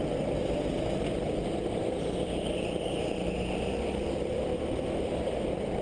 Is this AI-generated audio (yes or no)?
no